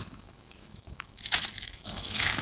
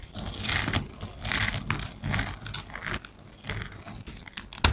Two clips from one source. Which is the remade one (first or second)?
first